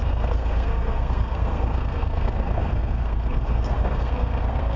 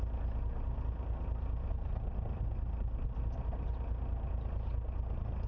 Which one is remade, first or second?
first